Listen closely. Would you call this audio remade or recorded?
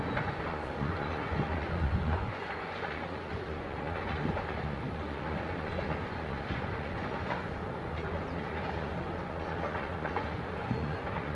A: remade